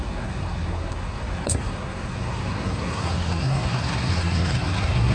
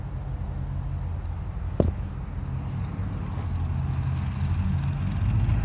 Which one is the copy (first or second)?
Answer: first